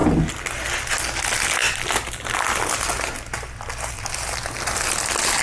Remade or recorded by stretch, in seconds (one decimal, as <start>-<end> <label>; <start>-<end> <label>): 0.0-5.4 recorded